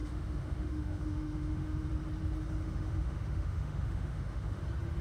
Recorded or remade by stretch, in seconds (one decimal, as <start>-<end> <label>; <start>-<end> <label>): 0.0-1.9 remade; 1.9-2.6 recorded; 2.6-4.6 remade; 4.6-5.0 recorded